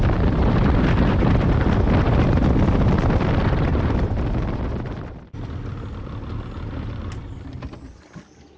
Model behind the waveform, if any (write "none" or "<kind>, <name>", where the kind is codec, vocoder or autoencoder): none